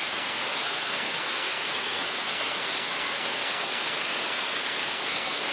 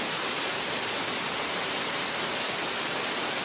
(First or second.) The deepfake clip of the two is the first